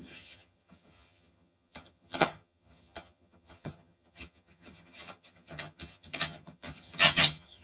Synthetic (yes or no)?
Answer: yes